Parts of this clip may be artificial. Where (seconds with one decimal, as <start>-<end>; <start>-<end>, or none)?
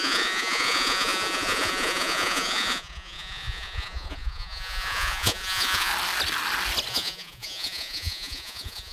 0.0-5.9; 6.9-8.9